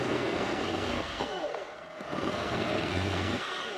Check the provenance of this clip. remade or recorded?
remade